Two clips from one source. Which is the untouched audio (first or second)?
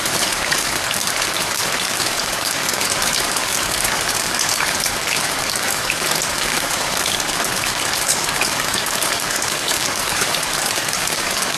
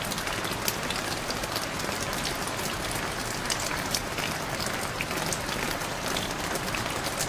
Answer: second